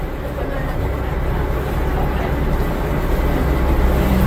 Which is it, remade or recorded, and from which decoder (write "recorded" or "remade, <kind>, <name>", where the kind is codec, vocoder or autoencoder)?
recorded